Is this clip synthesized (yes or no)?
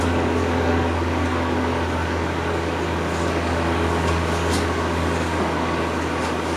yes